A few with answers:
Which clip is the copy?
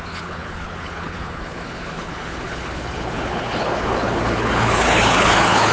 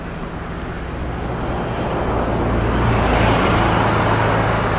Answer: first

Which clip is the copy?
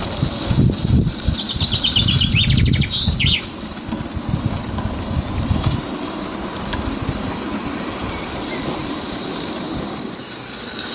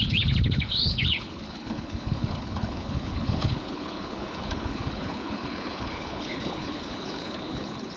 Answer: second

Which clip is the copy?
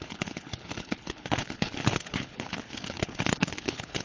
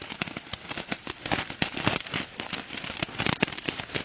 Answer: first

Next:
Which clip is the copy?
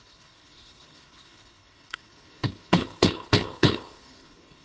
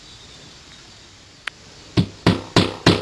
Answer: first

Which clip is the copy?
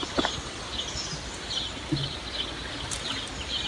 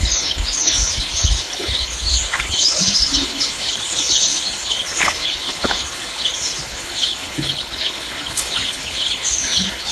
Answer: second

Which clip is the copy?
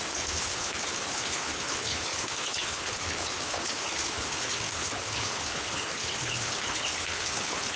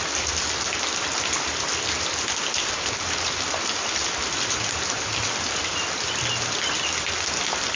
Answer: first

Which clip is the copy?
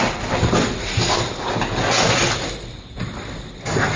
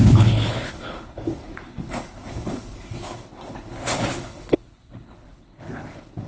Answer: second